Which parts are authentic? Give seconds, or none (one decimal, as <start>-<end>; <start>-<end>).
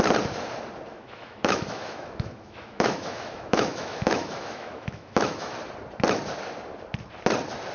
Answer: 0.0-0.9; 5.5-7.7